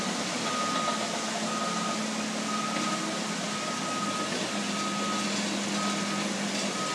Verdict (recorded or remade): recorded